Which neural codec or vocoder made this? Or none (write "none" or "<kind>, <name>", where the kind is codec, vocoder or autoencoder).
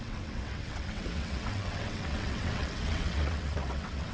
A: vocoder, WaveNeXt